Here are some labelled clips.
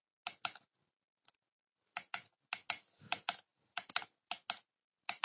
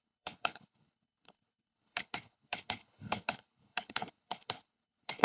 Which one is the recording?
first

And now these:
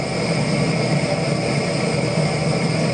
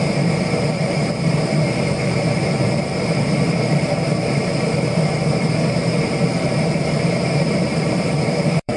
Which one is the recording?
first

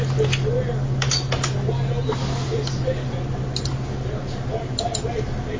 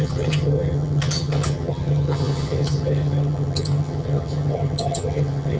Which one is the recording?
first